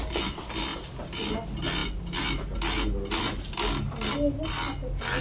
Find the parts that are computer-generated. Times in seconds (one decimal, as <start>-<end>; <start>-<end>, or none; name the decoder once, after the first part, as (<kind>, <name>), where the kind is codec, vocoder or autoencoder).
none